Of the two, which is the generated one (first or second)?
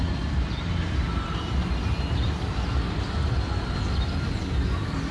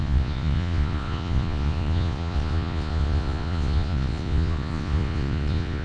second